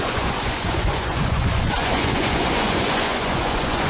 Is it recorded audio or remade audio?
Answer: remade